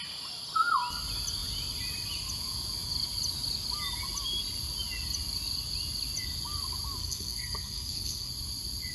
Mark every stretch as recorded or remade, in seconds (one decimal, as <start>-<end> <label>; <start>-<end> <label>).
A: 0.0-7.0 recorded; 7.0-8.3 remade; 8.3-8.9 recorded